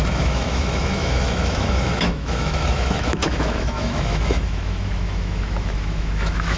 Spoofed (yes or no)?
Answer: yes